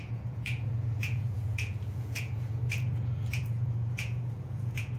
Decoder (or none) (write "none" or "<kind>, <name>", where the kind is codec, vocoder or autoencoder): vocoder, Vocos